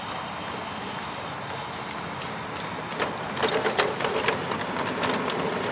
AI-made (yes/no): no